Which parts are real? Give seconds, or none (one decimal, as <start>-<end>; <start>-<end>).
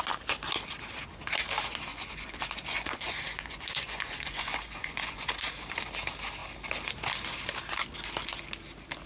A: 0.0-1.9; 5.3-9.1